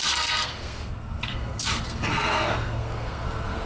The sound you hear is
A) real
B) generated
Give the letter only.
B